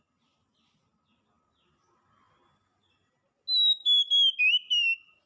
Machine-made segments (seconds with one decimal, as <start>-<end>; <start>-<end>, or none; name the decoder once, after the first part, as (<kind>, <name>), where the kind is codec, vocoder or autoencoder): none